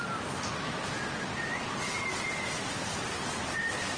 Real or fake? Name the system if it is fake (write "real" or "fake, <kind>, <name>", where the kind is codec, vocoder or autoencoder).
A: real